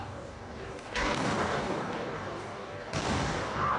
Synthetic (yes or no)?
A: yes